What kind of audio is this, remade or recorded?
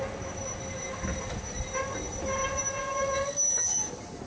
recorded